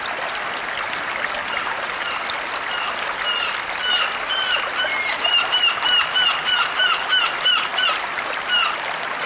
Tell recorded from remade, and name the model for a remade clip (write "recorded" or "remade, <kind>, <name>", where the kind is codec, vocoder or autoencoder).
recorded